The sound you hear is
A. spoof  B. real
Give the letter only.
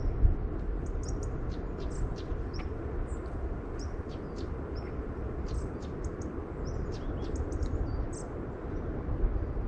B